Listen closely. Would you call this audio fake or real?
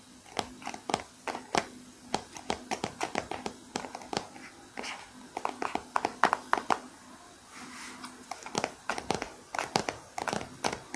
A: real